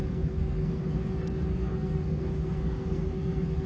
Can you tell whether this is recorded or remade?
remade